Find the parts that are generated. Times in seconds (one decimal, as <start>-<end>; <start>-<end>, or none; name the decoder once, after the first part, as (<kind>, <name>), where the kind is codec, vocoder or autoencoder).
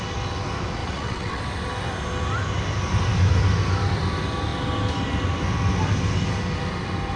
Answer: 0.8-1.4 (vocoder, WaveNeXt)